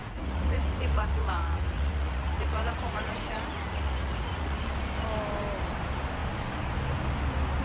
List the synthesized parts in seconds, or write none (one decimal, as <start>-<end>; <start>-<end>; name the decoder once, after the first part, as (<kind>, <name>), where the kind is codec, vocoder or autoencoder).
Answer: 0.0-4.6 (vocoder, Vocos)